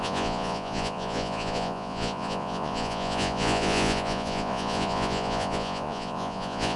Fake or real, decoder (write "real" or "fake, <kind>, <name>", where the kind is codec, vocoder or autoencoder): fake, vocoder, Vocos